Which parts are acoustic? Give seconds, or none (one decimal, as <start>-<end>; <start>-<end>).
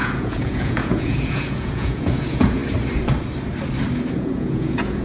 2.6-4.1